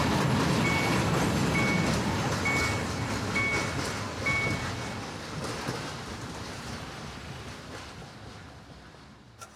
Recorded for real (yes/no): yes